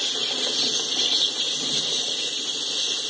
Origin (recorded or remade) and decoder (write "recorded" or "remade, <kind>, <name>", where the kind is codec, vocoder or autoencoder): recorded